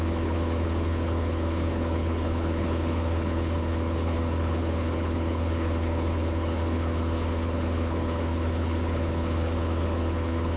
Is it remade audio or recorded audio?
remade